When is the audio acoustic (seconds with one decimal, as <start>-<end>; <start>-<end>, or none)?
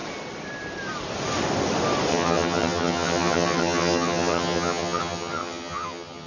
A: 0.0-2.1